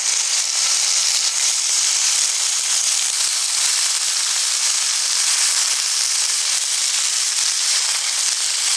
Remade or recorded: remade